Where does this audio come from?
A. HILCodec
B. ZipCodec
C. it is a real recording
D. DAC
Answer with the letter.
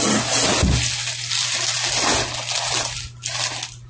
C